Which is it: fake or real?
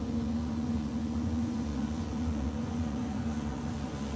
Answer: fake